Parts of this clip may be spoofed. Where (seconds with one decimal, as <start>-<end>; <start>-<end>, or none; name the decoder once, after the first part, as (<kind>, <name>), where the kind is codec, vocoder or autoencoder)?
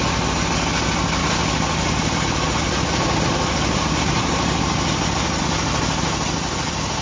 1.2-5.4 (vocoder, BigVGAN v2)